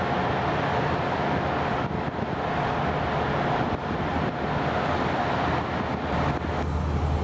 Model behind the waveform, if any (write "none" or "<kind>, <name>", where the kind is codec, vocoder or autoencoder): none